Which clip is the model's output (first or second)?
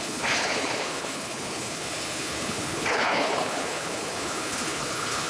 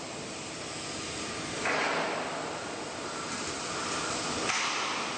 first